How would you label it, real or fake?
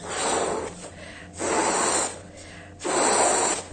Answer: real